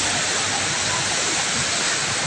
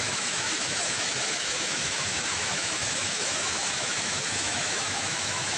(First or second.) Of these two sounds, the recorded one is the first